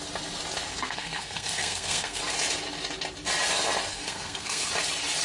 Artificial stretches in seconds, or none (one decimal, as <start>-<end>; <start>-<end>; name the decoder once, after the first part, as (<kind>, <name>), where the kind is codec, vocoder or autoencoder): 0.7-2.2 (codec, SNAC); 3.9-4.7